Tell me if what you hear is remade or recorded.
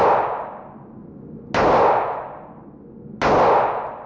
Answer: recorded